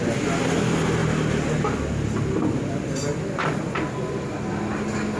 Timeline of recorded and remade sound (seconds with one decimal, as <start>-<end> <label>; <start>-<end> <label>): 0.0-5.2 recorded